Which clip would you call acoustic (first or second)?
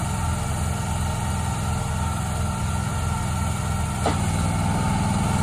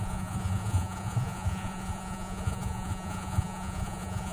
first